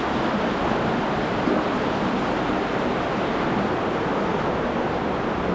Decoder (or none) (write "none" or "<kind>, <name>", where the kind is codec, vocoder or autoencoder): none